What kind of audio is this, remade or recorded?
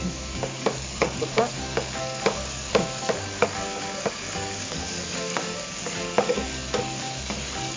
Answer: remade